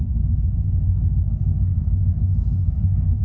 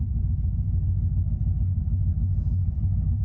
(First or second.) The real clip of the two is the second